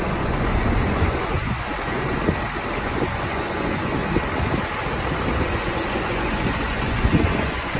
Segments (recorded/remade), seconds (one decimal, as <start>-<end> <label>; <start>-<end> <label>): 0.0-2.2 remade; 2.2-2.8 recorded; 2.8-4.0 remade; 4.0-5.4 recorded; 5.4-7.8 remade